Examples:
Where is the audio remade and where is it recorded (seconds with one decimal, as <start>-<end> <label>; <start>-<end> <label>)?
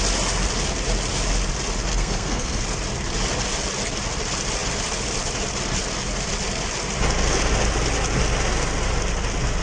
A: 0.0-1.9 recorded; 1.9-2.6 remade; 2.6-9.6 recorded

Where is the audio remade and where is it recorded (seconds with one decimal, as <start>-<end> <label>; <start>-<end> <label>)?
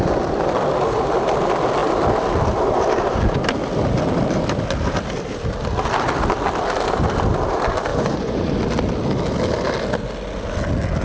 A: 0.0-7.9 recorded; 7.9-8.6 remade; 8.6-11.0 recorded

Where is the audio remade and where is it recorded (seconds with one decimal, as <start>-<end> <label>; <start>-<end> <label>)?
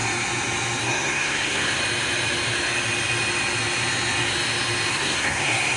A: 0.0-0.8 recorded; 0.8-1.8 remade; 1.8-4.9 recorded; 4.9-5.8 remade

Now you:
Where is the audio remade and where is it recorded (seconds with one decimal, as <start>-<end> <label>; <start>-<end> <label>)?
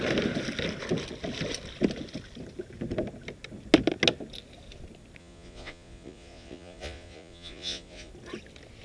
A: 0.0-5.2 recorded; 5.2-8.1 remade; 8.1-8.8 recorded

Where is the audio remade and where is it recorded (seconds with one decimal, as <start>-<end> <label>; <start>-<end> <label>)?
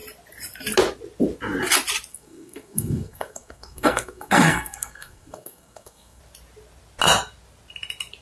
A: 0.0-2.1 recorded; 2.1-6.2 remade; 6.2-8.2 recorded